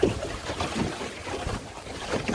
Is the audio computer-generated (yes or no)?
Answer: no